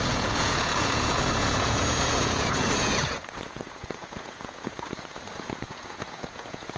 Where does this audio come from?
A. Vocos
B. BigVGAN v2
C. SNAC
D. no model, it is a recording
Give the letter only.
A